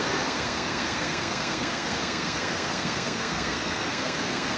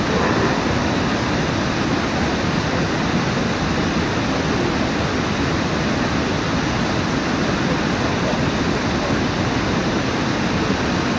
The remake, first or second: first